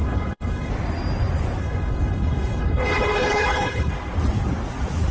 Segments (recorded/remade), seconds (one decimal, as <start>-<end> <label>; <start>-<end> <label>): 0.0-0.7 remade; 0.7-1.6 recorded; 1.6-3.9 remade; 3.9-5.1 recorded